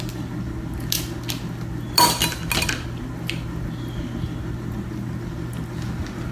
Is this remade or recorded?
recorded